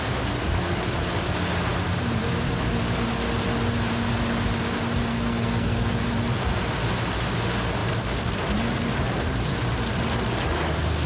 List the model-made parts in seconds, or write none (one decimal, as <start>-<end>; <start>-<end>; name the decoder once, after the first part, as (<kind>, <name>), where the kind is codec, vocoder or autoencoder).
5.1-5.9 (codec, SNAC)